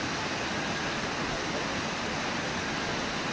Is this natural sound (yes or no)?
yes